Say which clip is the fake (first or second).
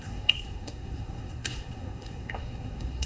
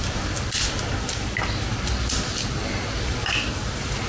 first